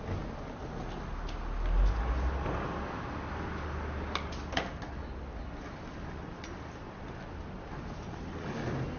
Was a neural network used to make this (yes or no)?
no